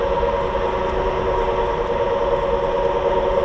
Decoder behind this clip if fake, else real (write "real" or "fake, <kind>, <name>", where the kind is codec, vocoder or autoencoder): real